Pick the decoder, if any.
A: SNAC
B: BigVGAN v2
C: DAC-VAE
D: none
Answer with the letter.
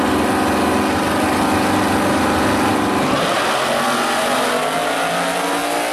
D